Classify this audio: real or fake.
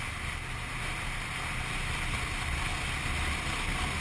real